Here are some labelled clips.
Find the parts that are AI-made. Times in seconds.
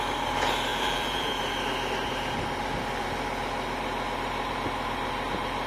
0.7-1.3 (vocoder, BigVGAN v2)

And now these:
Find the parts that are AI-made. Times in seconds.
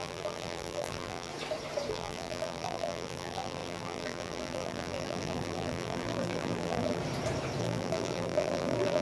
0.0-1.3 (vocoder, BigVGAN v2); 1.9-7.0; 7.6-9.0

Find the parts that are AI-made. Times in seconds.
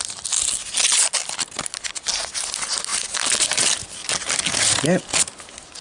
none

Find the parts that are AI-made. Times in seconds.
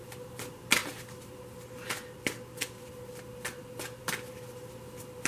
none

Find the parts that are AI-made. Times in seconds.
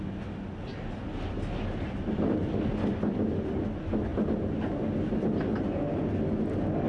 none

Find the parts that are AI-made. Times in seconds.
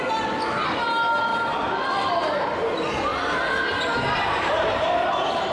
4.2-4.8 (vocoder, BigVGAN v2)